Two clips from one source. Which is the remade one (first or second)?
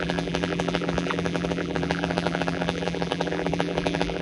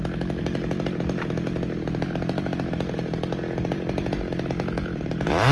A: first